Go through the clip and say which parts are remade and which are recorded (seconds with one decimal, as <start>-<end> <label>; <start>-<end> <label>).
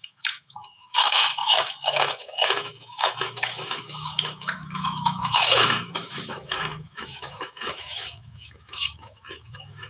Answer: 0.0-9.9 remade